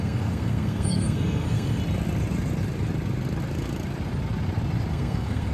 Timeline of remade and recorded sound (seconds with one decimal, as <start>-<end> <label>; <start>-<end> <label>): 0.0-1.8 remade; 1.8-4.9 recorded; 4.9-5.5 remade